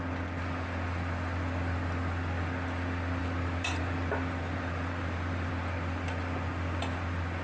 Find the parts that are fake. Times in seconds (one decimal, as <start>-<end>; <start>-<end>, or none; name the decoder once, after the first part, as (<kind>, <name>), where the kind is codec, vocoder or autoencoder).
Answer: 3.2-5.5 (vocoder, BigVGAN v2)